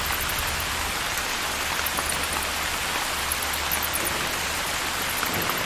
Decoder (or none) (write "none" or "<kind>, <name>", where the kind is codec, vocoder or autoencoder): none